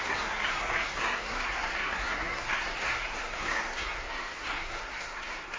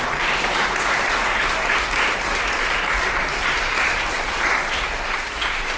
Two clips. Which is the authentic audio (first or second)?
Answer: second